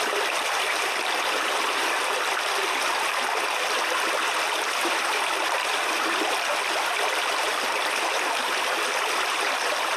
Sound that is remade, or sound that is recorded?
remade